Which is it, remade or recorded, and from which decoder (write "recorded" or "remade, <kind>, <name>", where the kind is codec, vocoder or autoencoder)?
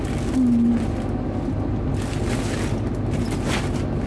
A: recorded